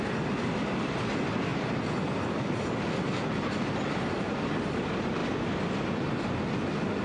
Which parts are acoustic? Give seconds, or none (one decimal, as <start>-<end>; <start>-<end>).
0.0-7.0